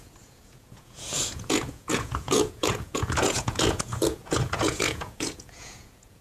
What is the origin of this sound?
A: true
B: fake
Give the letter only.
B